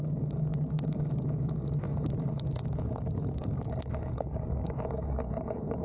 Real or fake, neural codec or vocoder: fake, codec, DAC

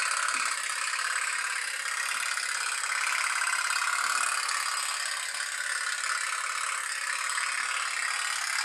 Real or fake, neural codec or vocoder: real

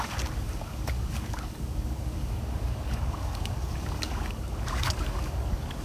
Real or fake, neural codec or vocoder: fake, codec, DAC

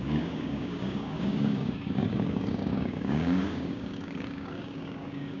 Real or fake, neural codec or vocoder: fake, codec, DAC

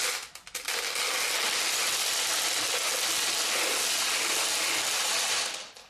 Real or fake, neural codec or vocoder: real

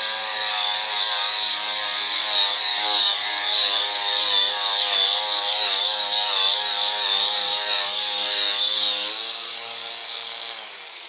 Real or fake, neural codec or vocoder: fake, codec, DAC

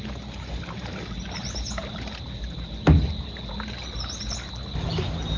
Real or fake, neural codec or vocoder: real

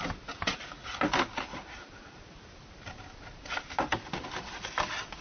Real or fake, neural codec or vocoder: real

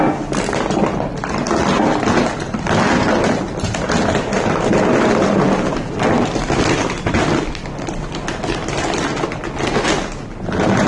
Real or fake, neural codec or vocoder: real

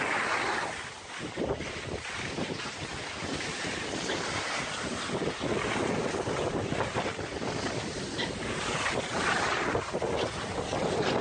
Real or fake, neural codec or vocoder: real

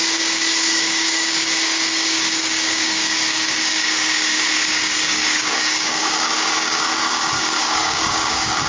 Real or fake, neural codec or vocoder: fake, codec, DAC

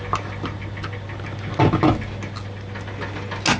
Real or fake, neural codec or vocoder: real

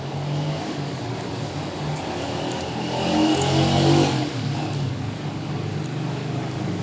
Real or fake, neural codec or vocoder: fake, codec, DAC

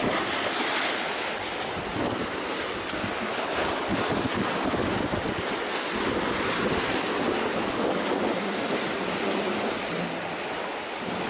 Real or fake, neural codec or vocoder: real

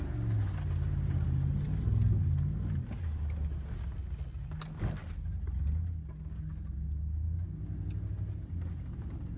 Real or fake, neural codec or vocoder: real